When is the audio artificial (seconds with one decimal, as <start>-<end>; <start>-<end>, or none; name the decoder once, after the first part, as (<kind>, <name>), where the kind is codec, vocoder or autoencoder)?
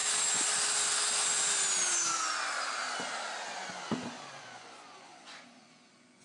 3.7-6.2 (vocoder, Vocos)